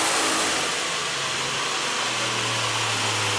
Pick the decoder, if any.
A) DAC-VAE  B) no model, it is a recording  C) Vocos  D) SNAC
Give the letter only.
B